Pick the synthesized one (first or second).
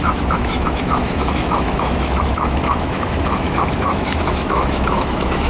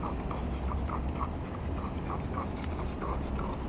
first